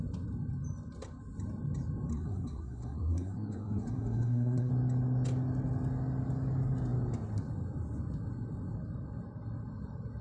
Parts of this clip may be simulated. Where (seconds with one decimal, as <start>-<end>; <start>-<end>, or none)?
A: 2.1-4.7